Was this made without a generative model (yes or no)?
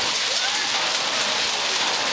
yes